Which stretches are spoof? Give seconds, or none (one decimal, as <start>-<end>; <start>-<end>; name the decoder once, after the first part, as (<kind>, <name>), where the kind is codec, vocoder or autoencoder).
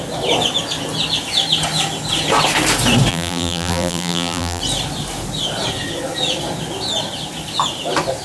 3.1-4.6 (vocoder, BigVGAN v2)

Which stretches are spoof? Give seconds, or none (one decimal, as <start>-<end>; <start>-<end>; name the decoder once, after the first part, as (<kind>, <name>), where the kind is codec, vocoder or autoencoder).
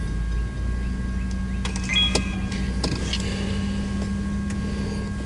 none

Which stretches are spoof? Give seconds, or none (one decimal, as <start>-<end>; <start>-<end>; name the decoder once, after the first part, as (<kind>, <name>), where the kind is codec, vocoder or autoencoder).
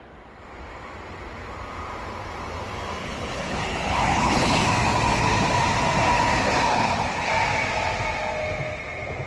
3.0-4.6 (codec, HILCodec); 6.7-7.3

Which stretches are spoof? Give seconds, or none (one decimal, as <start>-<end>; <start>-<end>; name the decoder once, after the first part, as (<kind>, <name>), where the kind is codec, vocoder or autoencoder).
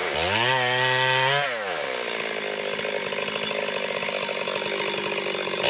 none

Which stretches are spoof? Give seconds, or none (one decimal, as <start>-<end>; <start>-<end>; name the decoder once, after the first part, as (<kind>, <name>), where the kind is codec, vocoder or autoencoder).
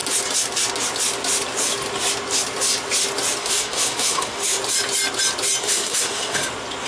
3.4-4.6 (autoencoder, DAC-VAE); 5.6-6.4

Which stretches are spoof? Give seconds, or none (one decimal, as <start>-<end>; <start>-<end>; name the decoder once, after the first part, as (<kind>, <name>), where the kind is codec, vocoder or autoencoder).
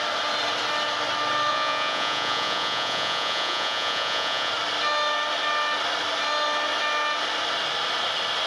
1.5-4.5 (vocoder, Vocos)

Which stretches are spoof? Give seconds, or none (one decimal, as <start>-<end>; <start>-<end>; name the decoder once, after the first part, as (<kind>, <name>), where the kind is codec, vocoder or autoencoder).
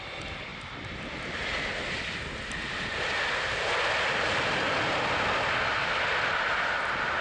none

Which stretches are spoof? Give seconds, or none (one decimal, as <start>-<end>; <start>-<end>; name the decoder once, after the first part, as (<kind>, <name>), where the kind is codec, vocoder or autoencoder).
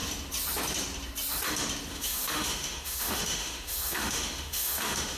1.9-5.2 (autoencoder, DAC-VAE)